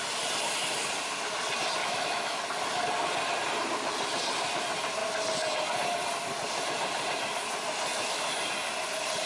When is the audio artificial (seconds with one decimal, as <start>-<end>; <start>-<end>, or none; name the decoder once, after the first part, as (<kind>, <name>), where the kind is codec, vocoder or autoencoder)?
1.8-2.4 (autoencoder, DAC-VAE); 7.9-8.4